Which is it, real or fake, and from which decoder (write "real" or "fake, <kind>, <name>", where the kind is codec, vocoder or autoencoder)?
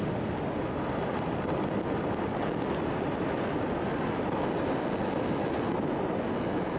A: real